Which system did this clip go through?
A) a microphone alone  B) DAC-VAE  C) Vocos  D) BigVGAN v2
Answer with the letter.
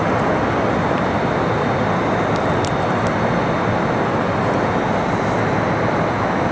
A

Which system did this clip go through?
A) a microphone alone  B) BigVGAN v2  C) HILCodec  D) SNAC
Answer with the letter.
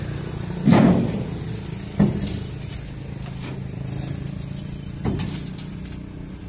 A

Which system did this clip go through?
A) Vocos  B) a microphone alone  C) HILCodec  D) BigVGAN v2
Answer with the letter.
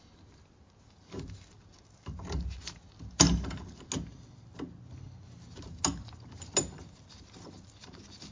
B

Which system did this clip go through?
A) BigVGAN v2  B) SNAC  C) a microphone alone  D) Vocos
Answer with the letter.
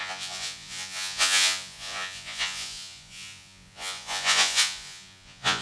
D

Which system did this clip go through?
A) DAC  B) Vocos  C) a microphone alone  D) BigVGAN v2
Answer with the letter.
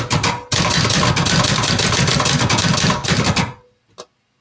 C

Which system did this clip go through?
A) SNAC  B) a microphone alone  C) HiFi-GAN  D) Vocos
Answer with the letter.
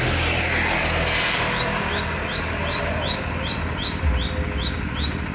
B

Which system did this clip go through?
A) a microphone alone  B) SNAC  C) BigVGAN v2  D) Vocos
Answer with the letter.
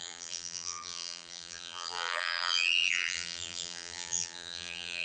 C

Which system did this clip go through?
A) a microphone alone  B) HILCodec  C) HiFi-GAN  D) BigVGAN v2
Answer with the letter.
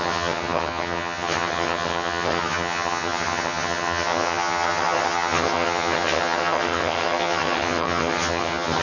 C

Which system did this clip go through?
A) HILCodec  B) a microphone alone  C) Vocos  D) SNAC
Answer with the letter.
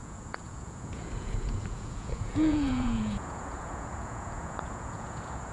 C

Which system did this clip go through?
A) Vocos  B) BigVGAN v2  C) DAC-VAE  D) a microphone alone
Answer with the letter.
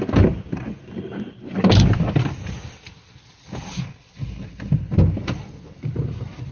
D